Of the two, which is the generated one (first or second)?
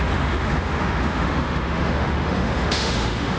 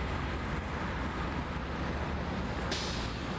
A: first